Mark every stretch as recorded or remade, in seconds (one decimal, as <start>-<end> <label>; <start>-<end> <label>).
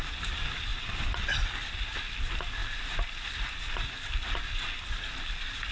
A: 0.0-5.7 recorded